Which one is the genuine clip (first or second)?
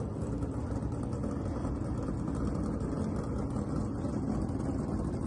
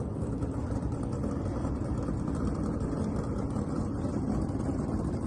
first